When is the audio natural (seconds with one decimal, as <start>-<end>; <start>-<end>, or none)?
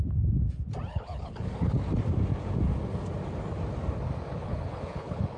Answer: 0.0-0.9; 1.8-4.4